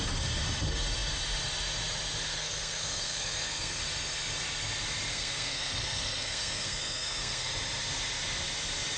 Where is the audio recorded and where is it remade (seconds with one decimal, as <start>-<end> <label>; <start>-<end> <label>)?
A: 0.0-2.3 recorded; 2.3-3.8 remade; 3.8-5.1 recorded; 5.1-7.5 remade; 7.5-9.0 recorded